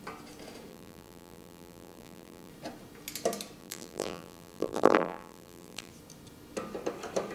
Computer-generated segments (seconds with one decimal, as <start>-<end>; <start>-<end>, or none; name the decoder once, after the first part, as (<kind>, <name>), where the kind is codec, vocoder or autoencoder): 0.7-2.5 (vocoder, BigVGAN v2); 3.6-5.9